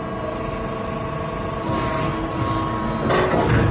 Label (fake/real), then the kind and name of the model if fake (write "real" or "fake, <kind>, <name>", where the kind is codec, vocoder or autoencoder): real